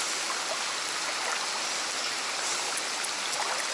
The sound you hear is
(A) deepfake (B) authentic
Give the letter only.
B